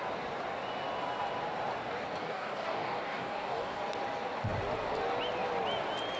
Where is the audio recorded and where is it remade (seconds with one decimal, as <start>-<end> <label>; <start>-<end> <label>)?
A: 0.0-2.2 recorded; 2.2-3.8 remade; 3.8-6.2 recorded